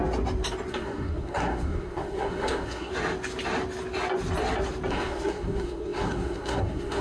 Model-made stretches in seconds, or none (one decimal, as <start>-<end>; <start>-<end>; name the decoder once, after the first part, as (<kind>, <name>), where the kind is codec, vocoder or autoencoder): 0.7-2.9 (codec, SNAC); 4.9-7.0

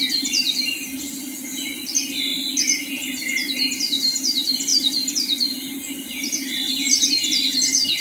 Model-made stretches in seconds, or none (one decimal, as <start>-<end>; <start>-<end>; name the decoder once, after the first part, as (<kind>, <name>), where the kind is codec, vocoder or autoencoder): 0.0-4.7 (vocoder, BigVGAN v2); 5.7-8.0